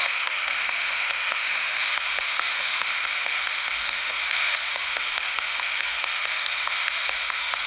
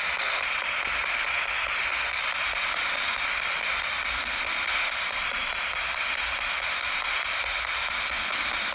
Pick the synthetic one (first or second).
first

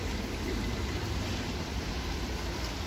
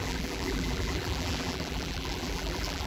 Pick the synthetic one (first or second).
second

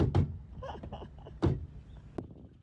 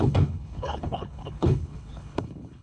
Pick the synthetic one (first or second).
second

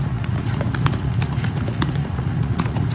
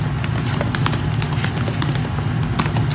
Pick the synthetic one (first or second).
first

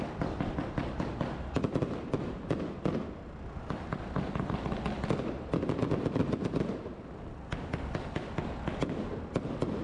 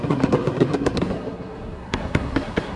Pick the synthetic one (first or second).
second